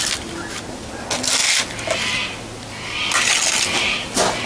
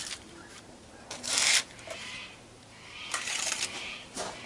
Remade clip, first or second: second